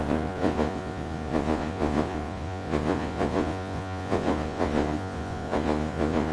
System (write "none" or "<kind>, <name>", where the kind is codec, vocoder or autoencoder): vocoder, Vocos